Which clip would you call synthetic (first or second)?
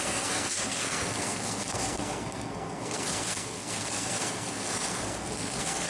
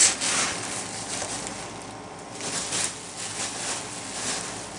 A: first